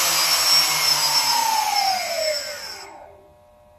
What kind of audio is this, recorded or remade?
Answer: recorded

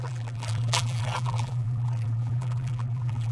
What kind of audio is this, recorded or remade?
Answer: remade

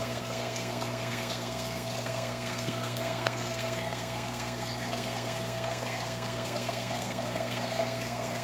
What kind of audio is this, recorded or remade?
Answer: remade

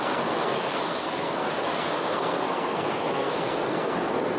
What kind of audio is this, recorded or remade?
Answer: remade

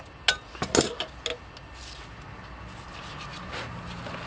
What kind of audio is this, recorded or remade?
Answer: recorded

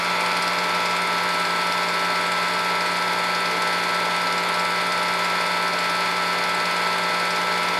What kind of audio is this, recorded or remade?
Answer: recorded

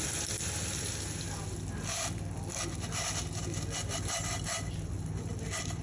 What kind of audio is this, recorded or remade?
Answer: recorded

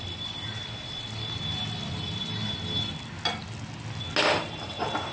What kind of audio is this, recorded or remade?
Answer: recorded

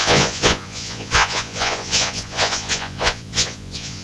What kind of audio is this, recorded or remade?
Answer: remade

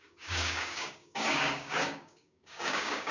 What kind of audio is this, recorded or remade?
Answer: remade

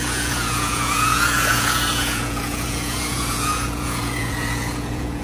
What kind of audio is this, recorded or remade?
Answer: remade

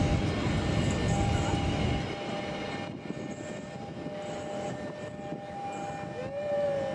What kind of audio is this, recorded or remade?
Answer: recorded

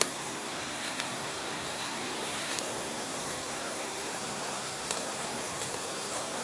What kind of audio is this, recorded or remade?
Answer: remade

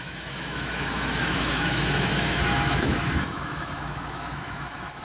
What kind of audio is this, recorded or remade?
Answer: remade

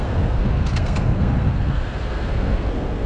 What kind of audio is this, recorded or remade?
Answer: remade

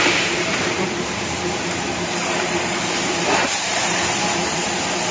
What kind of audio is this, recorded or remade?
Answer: remade